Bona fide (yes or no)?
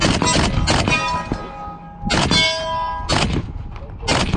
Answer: yes